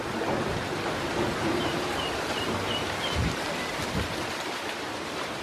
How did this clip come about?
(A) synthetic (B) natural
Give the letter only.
A